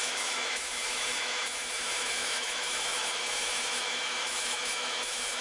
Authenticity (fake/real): fake